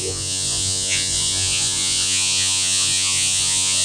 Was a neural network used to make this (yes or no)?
yes